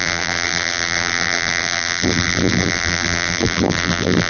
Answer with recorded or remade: remade